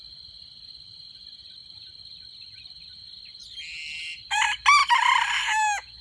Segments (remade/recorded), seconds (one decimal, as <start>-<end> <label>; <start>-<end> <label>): 0.0-6.0 recorded